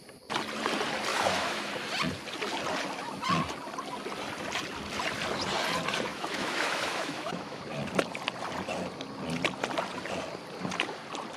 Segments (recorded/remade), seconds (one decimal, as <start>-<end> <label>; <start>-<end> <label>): 0.0-1.1 recorded; 1.1-1.7 remade; 1.7-6.1 recorded; 6.1-7.6 remade; 7.6-11.4 recorded